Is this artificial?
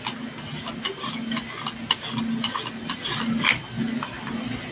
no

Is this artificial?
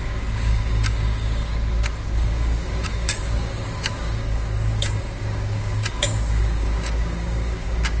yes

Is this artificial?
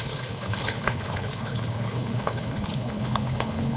yes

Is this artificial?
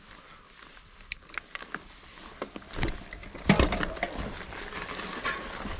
no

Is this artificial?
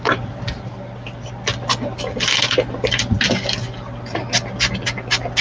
no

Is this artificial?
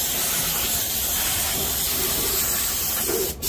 no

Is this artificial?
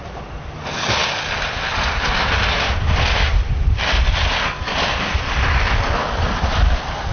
no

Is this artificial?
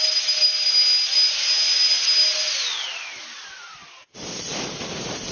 no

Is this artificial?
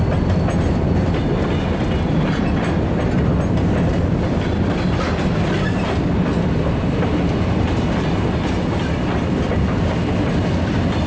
no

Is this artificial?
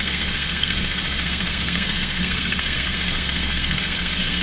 yes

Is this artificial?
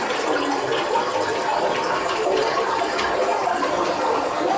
no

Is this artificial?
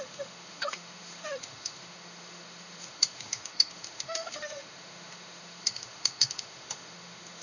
yes